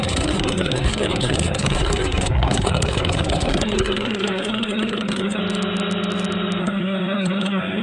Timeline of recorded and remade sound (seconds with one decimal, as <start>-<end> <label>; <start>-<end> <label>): 0.0-5.4 remade; 5.4-6.6 recorded; 6.6-7.8 remade